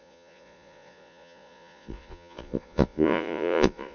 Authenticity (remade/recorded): remade